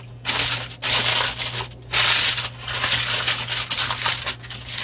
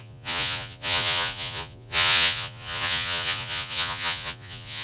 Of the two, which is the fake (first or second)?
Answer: second